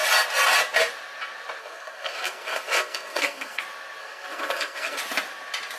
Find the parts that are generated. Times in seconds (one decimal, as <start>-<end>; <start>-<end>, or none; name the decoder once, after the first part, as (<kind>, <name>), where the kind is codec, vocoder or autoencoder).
1.6-3.6 (codec, SNAC); 4.0-5.0